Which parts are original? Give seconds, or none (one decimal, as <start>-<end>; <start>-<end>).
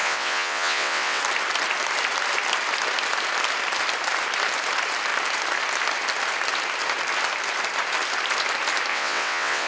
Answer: 1.2-8.9